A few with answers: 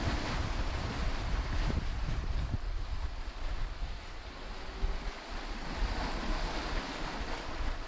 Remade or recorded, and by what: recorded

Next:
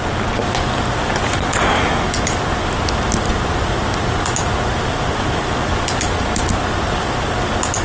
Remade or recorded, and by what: recorded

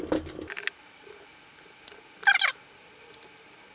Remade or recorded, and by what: recorded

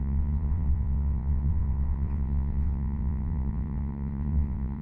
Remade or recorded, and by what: remade, vocoder, WaveNeXt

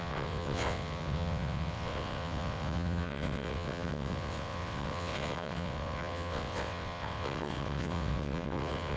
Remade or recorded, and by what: remade, vocoder, WaveNeXt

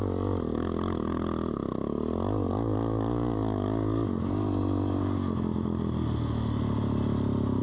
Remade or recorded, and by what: recorded